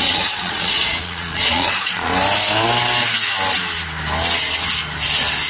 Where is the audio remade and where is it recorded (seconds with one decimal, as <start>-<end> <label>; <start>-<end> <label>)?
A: 0.0-2.1 remade; 2.1-5.5 recorded